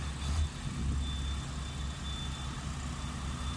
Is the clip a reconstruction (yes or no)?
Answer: no